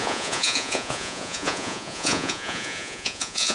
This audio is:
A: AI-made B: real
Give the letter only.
A